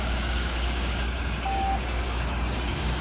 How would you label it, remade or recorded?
remade